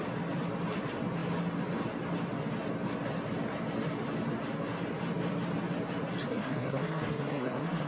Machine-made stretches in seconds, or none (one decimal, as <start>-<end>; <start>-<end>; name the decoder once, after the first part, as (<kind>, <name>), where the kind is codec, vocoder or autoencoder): 6.3-7.9 (codec, SNAC)